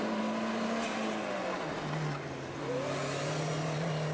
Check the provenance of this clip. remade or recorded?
recorded